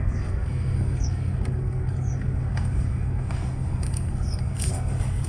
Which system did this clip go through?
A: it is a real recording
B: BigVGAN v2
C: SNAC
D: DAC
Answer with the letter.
C